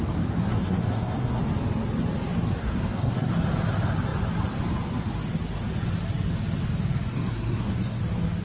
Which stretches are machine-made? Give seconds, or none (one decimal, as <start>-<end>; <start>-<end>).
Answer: 0.4-1.4; 2.6-3.3; 7.1-8.0